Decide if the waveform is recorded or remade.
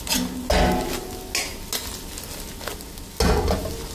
recorded